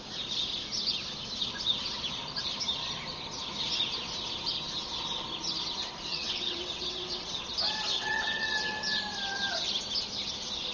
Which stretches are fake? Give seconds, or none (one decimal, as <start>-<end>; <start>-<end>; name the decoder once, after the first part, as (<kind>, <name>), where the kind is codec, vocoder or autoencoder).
6.1-7.4 (vocoder, WaveNeXt); 7.9-9.0